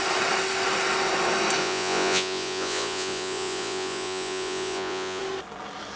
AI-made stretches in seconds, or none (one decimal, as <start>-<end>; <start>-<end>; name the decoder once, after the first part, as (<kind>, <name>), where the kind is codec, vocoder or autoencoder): 1.6-5.2 (vocoder, Vocos)